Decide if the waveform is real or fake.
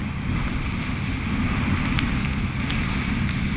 fake